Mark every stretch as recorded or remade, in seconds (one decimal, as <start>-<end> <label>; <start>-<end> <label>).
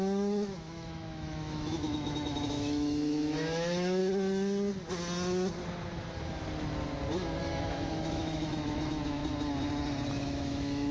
0.0-4.0 remade; 4.0-7.4 recorded; 7.4-9.2 remade; 9.2-10.1 recorded; 10.1-10.9 remade